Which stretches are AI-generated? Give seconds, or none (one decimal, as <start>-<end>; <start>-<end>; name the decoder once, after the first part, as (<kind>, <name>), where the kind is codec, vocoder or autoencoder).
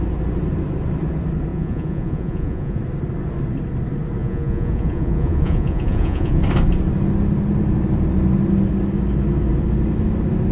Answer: 1.5-2.8 (vocoder, Vocos); 4.2-6.4